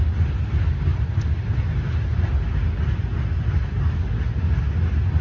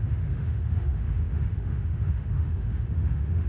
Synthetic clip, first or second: second